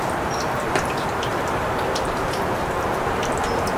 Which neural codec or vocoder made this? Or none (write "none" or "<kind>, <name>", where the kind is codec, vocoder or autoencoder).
vocoder, BigVGAN v2